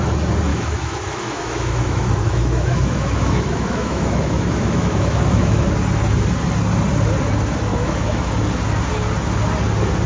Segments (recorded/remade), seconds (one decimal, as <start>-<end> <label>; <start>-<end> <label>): 0.0-0.5 recorded; 0.5-5.6 remade; 5.6-7.7 recorded; 7.7-8.3 remade; 8.3-10.1 recorded